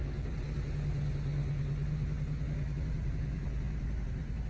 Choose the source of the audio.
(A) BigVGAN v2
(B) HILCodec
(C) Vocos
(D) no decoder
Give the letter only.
D